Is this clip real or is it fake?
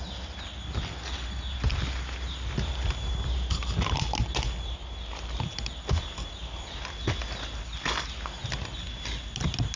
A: real